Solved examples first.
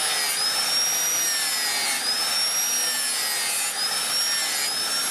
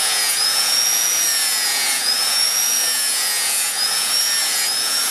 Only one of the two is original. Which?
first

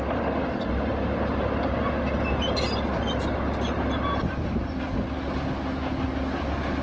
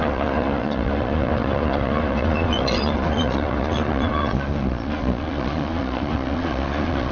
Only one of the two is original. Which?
first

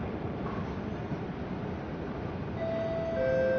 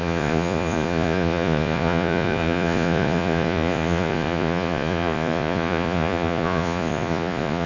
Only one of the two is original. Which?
first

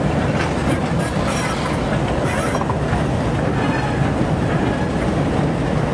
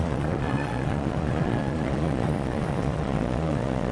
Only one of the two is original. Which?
first